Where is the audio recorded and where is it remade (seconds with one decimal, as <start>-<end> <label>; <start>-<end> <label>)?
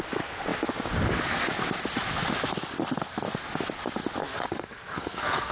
0.0-4.2 recorded; 4.2-5.5 remade